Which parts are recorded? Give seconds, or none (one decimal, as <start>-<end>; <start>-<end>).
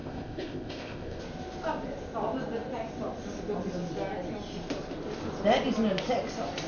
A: 1.2-6.7